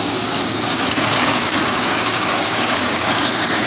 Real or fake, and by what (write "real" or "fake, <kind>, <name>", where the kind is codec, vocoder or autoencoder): fake, codec, DAC